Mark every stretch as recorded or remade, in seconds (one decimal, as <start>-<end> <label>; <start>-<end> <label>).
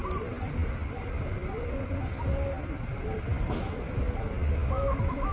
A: 0.0-4.6 recorded; 4.6-5.3 remade